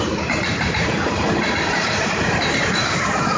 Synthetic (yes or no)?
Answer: yes